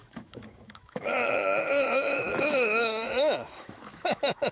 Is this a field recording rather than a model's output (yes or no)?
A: no